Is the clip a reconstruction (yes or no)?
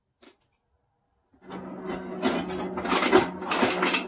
no